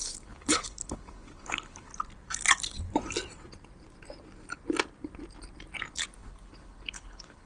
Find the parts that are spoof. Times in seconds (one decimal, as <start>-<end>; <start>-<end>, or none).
0.0-1.9; 5.9-7.5